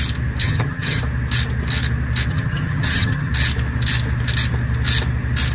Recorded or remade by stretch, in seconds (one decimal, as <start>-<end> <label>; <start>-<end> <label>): 0.0-0.4 recorded; 0.4-1.0 remade; 1.0-2.3 recorded; 2.3-3.3 remade; 3.3-5.5 recorded